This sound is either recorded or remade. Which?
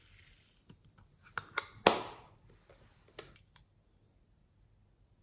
recorded